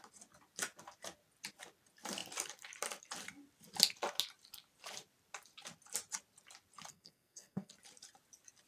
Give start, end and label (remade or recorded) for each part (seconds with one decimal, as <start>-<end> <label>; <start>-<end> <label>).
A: 0.0-6.9 recorded; 6.9-7.7 remade; 7.7-8.7 recorded